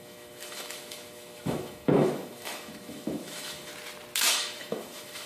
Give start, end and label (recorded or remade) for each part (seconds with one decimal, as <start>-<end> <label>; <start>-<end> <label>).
0.0-3.7 remade; 3.7-4.3 recorded; 4.3-5.3 remade